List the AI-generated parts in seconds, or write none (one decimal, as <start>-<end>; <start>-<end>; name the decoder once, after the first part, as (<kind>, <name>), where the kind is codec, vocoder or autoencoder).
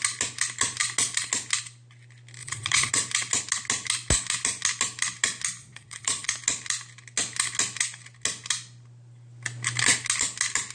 2.4-2.9 (vocoder, Vocos); 5.6-6.3